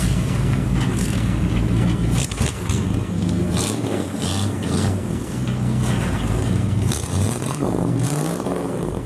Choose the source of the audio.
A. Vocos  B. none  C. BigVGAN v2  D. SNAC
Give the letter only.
D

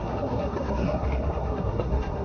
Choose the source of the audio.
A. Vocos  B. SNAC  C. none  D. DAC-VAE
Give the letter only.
B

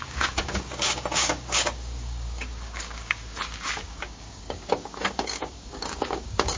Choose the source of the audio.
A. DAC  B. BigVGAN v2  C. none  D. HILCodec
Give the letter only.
A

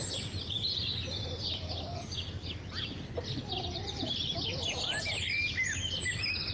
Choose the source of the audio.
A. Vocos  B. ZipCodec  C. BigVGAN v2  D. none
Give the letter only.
D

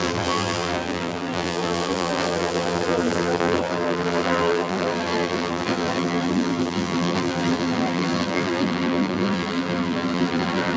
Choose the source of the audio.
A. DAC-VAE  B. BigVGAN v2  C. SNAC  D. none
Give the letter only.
B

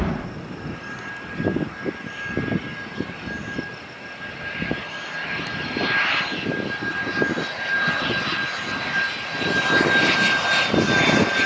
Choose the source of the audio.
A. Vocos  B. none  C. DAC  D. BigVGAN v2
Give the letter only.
B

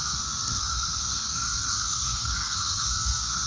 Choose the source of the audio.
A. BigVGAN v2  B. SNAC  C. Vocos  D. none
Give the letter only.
B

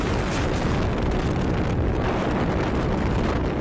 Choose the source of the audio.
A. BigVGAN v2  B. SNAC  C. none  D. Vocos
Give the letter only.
C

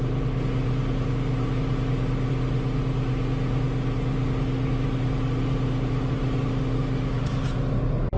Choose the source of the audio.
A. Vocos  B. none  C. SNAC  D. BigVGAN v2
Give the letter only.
B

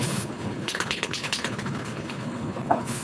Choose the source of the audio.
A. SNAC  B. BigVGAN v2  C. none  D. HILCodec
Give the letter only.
D